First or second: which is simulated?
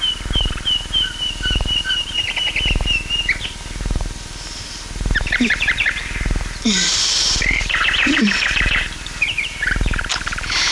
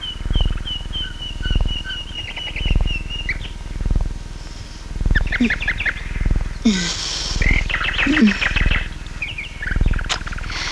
first